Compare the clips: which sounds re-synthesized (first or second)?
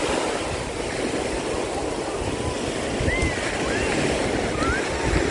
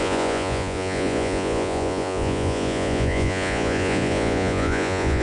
second